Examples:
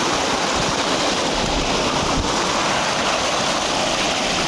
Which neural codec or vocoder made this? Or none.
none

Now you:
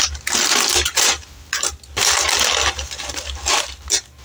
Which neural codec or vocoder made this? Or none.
none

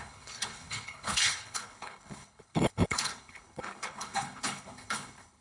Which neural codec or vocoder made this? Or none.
codec, HILCodec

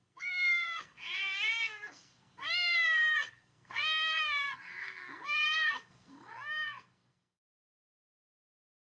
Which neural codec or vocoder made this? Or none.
codec, SNAC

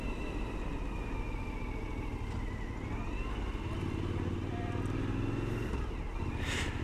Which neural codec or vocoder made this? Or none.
none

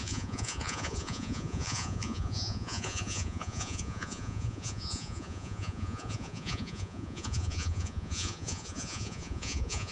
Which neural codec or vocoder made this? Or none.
vocoder, Vocos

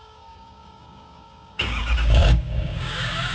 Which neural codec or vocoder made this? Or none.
codec, DAC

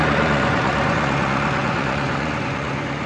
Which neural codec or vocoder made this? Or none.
vocoder, Vocos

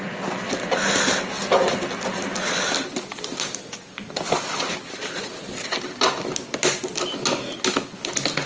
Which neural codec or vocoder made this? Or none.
none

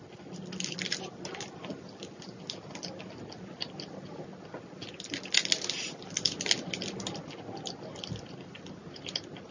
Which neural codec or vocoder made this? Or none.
none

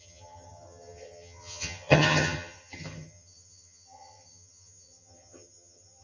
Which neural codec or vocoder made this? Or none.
vocoder, HiFi-GAN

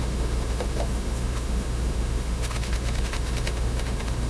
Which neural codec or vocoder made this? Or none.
autoencoder, DAC-VAE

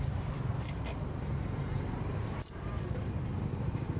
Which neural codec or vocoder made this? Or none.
vocoder, BigVGAN v2